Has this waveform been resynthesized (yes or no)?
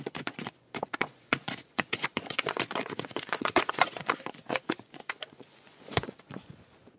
yes